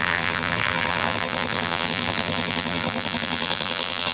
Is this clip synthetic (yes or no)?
yes